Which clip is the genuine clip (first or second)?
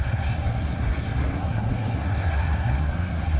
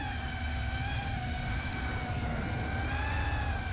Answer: second